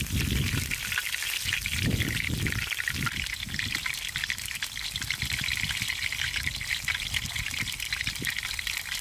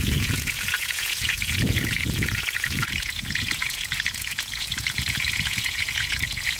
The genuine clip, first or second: first